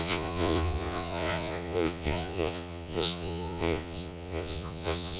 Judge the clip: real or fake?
fake